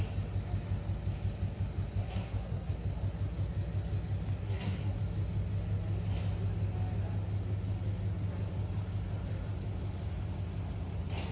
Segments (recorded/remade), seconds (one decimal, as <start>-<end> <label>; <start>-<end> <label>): 0.0-2.0 recorded; 2.0-2.7 remade; 2.7-4.4 recorded; 4.4-5.0 remade; 5.0-11.3 recorded